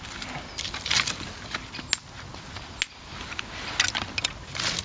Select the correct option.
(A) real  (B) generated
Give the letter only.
A